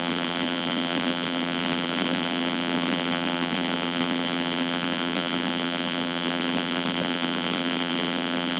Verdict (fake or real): fake